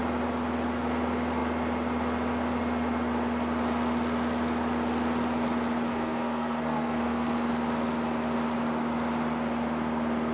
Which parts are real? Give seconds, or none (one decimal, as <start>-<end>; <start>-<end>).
0.0-5.9; 7.5-10.3